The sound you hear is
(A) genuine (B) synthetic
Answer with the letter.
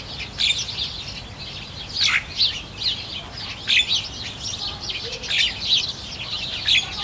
A